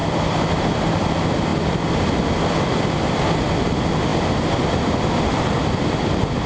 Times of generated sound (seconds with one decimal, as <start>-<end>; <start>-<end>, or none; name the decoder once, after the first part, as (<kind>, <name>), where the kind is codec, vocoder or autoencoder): 0.0-1.1 (vocoder, BigVGAN v2); 1.5-3.4; 4.1-5.4